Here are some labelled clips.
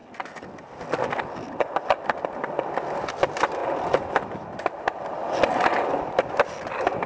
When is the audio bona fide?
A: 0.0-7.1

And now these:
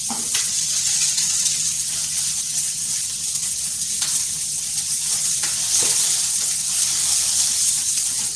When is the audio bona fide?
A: 7.0-7.5

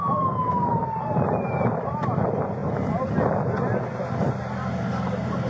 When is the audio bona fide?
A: 2.6-4.2